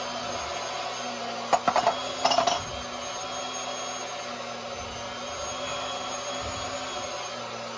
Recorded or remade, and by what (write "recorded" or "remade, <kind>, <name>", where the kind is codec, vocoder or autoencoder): recorded